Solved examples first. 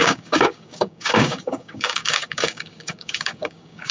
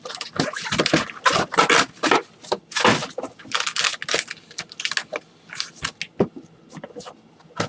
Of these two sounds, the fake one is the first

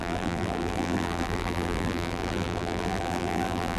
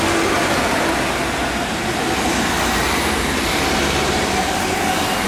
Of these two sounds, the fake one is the first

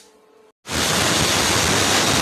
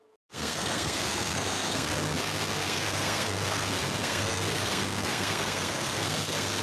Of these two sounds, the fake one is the second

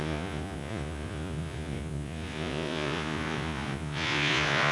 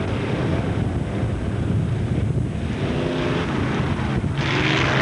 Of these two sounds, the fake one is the first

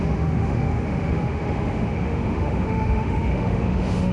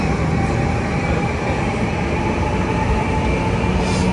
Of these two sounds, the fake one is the first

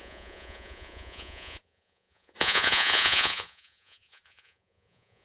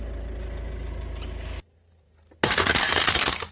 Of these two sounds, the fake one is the first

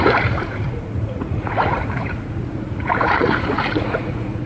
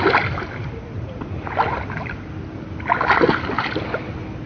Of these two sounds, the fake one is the first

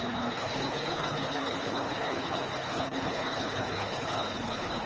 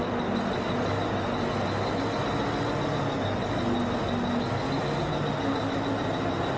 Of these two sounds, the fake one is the first